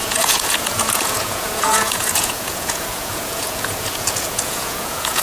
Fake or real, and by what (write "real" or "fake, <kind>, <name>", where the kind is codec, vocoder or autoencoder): fake, vocoder, Vocos